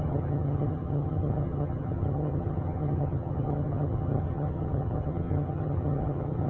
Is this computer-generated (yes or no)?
yes